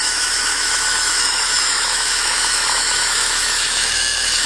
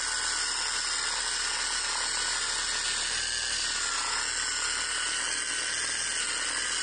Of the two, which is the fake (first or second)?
first